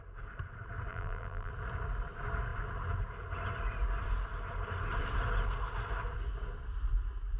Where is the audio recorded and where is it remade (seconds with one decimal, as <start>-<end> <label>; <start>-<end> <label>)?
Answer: 0.0-0.9 recorded; 0.9-1.5 remade; 1.5-7.4 recorded